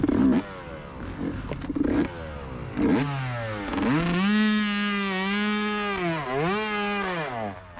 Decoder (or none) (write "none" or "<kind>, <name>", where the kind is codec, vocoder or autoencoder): none